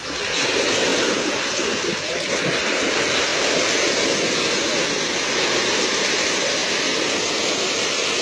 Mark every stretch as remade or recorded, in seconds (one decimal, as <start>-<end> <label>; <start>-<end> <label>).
0.0-8.2 recorded